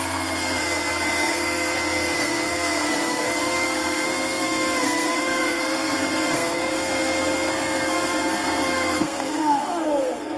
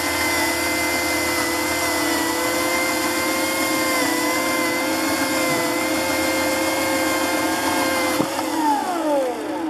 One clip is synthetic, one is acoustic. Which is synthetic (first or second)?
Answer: first